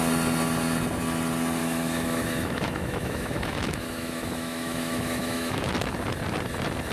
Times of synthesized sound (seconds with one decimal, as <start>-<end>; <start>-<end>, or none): 1.6-5.7